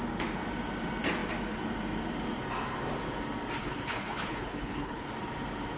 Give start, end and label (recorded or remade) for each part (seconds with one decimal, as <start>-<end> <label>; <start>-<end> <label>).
0.0-3.6 recorded; 3.6-5.1 remade; 5.1-5.8 recorded